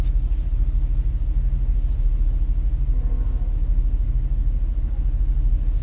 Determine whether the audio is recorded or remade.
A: recorded